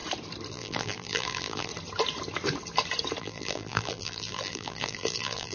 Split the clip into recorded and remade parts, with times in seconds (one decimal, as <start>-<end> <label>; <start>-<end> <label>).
0.0-0.5 recorded; 0.5-1.7 remade; 1.7-3.2 recorded; 3.2-5.5 remade